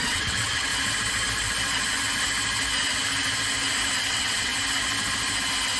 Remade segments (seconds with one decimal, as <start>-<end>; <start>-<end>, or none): 0.0-0.7; 4.1-4.5